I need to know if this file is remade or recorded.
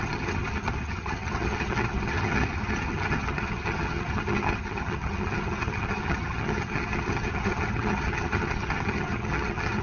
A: remade